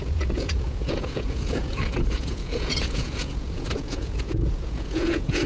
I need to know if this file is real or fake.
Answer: fake